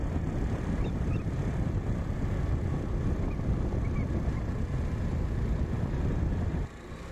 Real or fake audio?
real